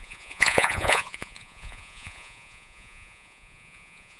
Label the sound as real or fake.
fake